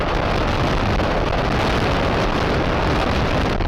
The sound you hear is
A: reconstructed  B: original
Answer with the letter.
B